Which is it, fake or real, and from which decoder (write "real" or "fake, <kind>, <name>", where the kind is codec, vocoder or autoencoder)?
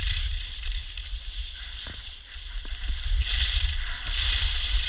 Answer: fake, vocoder, BigVGAN v2